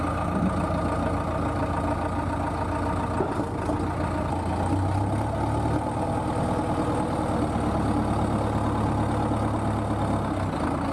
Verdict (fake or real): real